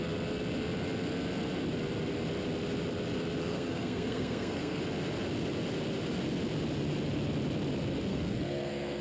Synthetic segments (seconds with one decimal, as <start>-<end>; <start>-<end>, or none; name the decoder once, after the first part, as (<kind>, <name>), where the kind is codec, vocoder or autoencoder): 3.4-4.8 (codec, SNAC); 8.1-9.0